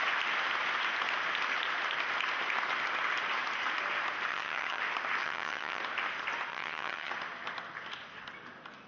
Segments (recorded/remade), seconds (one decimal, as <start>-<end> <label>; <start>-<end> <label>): 0.0-4.3 recorded; 4.3-4.8 remade; 4.8-5.2 recorded; 5.2-5.8 remade; 5.8-6.5 recorded; 6.5-7.1 remade; 7.1-8.9 recorded